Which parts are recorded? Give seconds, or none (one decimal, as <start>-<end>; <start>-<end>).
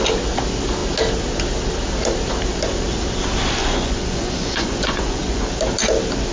0.0-3.6; 5.5-6.3